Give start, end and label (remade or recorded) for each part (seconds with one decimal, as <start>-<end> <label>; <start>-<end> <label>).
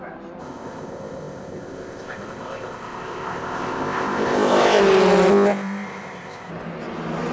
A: 0.0-0.4 recorded; 0.4-4.8 remade; 4.8-5.3 recorded; 5.3-6.5 remade; 6.5-7.3 recorded